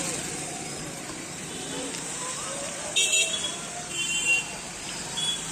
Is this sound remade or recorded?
remade